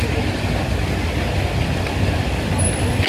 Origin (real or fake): real